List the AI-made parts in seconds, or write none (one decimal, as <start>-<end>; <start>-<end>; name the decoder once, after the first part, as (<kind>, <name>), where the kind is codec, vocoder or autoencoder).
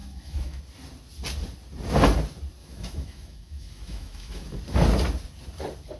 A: 0.0-0.6 (autoencoder, DAC-VAE); 2.6-4.6